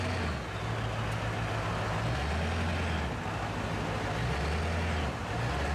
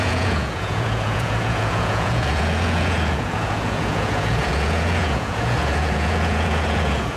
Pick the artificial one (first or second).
second